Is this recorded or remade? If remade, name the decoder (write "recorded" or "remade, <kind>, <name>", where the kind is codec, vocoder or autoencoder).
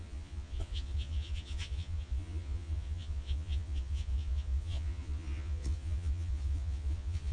remade, vocoder, Vocos